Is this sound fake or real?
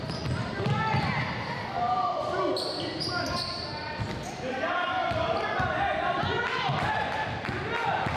real